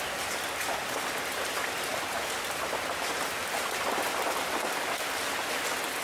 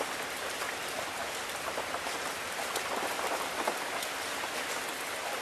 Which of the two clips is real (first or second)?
first